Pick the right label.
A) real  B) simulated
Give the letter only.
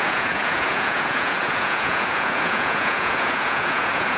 B